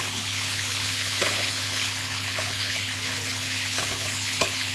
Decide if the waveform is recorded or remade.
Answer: remade